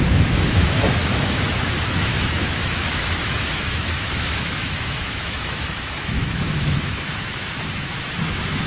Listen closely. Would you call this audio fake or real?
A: fake